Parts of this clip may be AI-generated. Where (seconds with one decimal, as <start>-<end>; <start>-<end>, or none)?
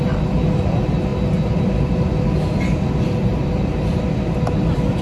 none